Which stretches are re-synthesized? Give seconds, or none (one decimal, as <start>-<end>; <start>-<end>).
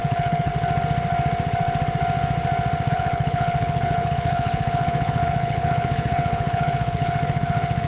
0.0-0.5; 2.9-7.9